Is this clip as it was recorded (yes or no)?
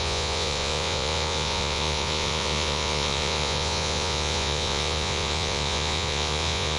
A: no